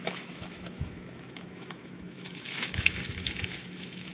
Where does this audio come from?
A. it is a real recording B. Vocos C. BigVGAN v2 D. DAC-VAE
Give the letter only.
D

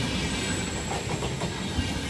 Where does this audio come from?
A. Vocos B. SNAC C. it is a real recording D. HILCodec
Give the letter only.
C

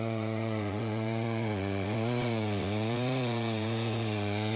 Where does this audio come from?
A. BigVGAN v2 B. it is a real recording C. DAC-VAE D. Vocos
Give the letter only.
D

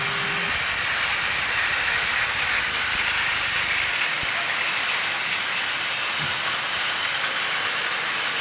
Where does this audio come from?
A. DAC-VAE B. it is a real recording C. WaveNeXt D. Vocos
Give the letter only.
B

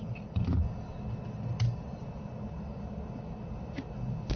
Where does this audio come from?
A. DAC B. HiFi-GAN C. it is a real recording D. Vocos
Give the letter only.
C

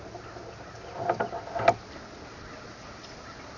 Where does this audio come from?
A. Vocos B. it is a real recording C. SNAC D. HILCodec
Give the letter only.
B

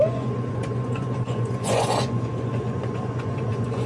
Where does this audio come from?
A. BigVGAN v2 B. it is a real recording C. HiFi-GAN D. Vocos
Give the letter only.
D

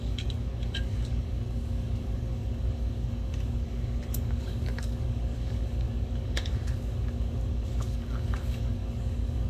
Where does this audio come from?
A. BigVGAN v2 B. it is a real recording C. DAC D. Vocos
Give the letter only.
C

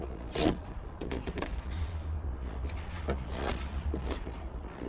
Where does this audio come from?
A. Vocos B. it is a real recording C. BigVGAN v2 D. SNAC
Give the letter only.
A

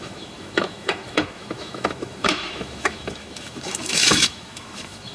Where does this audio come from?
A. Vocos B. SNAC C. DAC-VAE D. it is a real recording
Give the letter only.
C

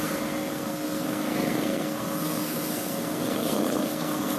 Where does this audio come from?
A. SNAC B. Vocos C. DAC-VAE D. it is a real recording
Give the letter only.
A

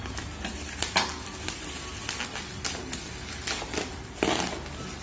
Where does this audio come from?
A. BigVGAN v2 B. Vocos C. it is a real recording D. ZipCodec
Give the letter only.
C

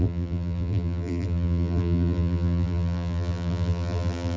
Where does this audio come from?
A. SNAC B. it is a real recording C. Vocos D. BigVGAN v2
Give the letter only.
D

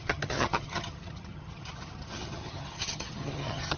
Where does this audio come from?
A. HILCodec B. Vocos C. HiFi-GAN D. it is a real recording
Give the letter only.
C